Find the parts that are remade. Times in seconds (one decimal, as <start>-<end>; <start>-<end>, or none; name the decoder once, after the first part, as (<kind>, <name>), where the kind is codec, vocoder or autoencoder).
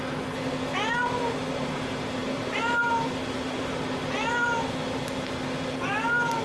none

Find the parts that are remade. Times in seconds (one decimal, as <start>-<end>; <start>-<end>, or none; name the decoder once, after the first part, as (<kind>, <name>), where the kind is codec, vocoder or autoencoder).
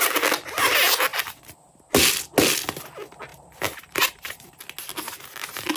3.3-4.6 (vocoder, BigVGAN v2)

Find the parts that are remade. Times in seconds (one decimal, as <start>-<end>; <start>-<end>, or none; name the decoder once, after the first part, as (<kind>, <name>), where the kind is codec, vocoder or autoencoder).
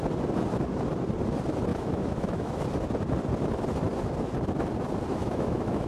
1.7-2.6 (autoencoder, DAC-VAE); 5.1-5.9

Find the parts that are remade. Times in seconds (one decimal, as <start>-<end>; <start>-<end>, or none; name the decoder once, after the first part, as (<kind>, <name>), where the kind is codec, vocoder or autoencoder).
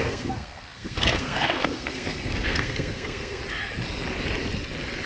0.0-3.4 (codec, SNAC)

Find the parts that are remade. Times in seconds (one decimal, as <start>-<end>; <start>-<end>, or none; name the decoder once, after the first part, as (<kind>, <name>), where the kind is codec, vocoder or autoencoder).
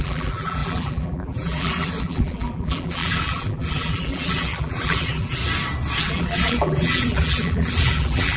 0.0-5.4 (vocoder, BigVGAN v2); 6.0-8.4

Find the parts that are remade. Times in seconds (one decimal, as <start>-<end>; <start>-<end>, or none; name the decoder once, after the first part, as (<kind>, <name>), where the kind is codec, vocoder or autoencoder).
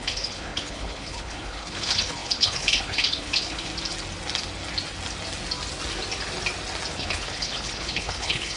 0.0-3.7 (codec, HILCodec); 6.9-8.6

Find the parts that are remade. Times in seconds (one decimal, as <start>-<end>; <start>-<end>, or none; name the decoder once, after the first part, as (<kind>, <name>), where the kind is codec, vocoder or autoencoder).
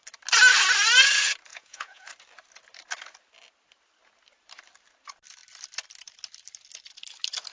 1.5-2.1 (vocoder, Vocos)